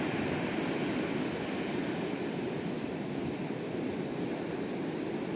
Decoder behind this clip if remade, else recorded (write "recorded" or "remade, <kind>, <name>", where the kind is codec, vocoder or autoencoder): recorded